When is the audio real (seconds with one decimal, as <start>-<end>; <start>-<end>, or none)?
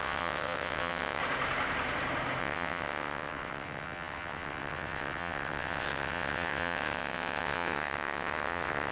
1.2-2.4